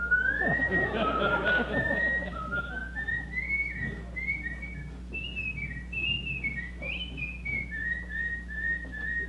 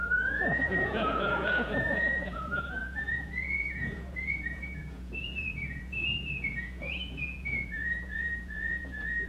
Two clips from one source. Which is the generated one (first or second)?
second